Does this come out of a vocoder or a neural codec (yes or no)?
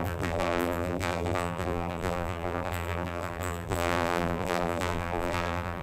yes